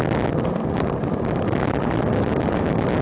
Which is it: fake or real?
real